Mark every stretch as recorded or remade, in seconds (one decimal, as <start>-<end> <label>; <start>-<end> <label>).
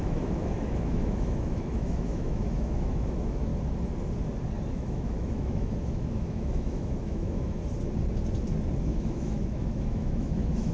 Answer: 0.0-3.5 remade; 3.5-4.7 recorded; 4.7-7.6 remade; 7.6-8.8 recorded; 8.8-10.7 remade